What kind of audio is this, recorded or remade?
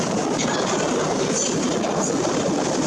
recorded